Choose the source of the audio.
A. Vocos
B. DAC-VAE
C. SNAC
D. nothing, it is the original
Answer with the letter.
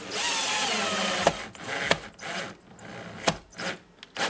D